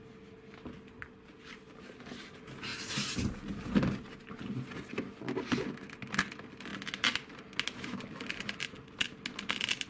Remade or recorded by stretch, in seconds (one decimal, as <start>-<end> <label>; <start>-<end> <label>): 0.0-9.9 recorded